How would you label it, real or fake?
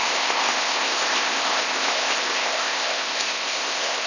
fake